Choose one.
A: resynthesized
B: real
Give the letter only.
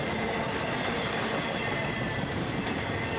B